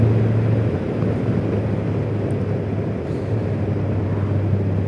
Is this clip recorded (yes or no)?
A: yes